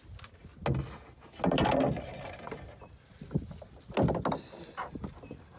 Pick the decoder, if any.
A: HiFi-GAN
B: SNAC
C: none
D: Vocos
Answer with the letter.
C